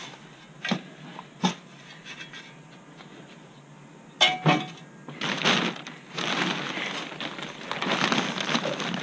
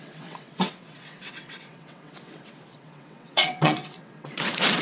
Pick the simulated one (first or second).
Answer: second